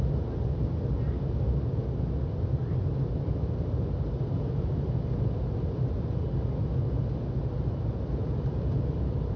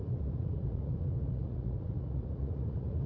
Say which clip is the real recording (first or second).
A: first